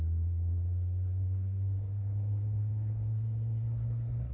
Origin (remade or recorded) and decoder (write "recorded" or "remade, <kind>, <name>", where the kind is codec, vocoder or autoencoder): remade, codec, SNAC